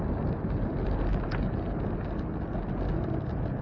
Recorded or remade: recorded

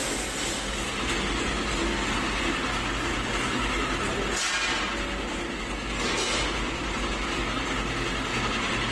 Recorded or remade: recorded